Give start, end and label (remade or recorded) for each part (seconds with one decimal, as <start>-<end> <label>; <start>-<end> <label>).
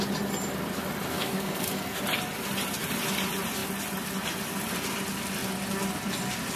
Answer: 0.0-1.1 recorded; 1.1-2.0 remade; 2.0-6.6 recorded